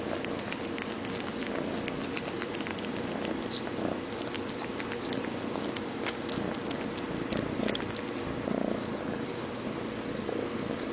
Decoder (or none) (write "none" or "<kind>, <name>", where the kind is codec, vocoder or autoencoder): none